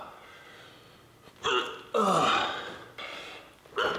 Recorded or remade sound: recorded